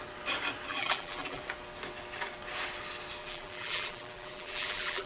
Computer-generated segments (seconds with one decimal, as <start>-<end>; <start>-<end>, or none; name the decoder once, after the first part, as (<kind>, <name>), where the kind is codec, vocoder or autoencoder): 0.7-1.4 (vocoder, BigVGAN v2); 3.2-5.1